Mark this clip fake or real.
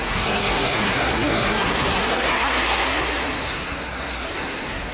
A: fake